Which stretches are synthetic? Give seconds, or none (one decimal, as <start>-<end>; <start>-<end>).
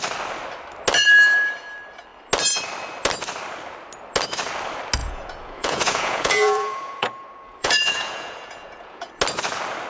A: 5.0-9.1